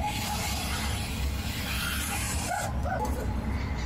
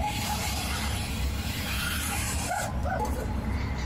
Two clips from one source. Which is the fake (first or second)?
second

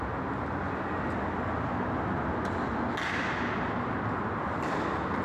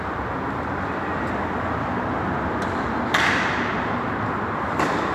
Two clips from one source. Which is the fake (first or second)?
second